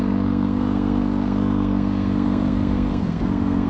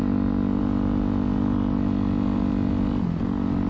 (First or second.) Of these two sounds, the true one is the second